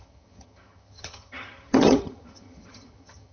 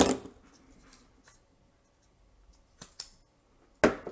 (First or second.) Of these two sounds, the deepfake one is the first